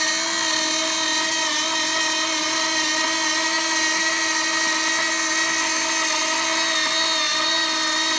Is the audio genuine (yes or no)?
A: yes